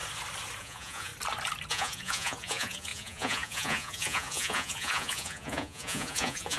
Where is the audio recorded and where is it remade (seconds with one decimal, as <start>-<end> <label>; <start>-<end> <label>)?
0.0-0.6 recorded; 0.6-1.1 remade; 1.1-1.7 recorded; 1.7-6.6 remade